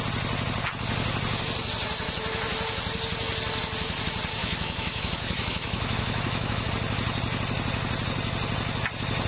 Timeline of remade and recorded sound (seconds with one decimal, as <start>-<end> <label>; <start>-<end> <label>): 0.0-4.4 recorded; 4.4-6.7 remade; 6.7-9.3 recorded